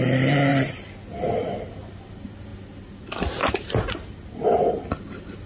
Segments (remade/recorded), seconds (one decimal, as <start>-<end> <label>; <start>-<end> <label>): 0.0-5.5 recorded